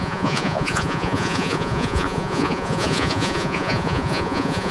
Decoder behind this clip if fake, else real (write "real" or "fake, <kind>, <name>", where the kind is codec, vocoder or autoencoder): fake, vocoder, Vocos